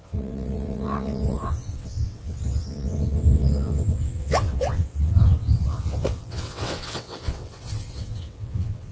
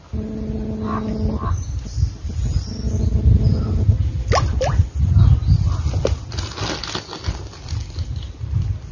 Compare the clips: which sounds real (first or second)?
second